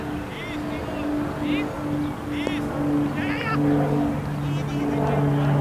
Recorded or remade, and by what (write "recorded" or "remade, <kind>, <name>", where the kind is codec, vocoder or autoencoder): recorded